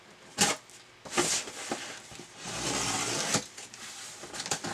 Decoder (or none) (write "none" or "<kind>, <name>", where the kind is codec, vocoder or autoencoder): none